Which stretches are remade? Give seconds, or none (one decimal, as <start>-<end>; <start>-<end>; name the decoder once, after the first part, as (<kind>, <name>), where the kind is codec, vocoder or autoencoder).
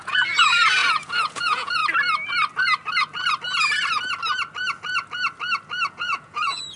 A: 0.0-1.8 (vocoder, Vocos); 5.9-6.8